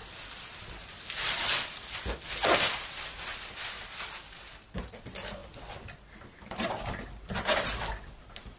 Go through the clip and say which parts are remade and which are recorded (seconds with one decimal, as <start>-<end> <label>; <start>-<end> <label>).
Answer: 0.0-0.7 recorded; 0.7-1.4 remade; 1.4-2.6 recorded; 2.6-5.4 remade; 5.4-6.4 recorded; 6.4-8.6 remade